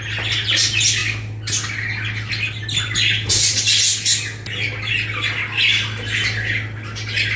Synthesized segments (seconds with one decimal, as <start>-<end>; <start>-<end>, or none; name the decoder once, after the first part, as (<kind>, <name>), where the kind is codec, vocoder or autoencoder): none